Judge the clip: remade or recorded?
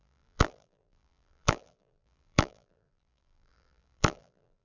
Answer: remade